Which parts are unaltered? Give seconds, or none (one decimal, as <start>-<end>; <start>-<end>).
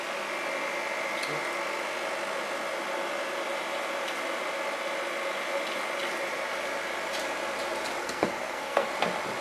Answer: 0.0-8.0; 8.9-9.4